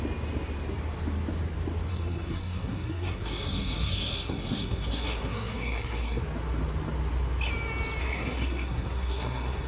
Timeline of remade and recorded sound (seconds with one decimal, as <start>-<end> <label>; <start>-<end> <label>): 0.0-1.9 recorded; 1.9-6.2 remade; 6.2-8.0 recorded; 8.0-9.7 remade